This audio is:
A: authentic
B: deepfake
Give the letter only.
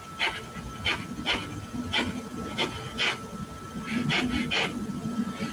A